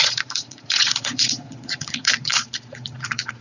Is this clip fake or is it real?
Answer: fake